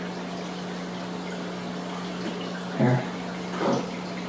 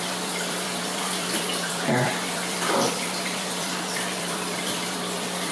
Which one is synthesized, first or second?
second